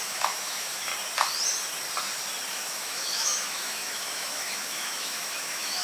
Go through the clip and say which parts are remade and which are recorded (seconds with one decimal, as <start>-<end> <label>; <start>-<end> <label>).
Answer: 0.0-0.9 remade; 0.9-2.5 recorded; 2.5-5.8 remade